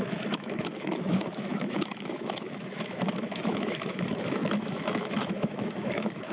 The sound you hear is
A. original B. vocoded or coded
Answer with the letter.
B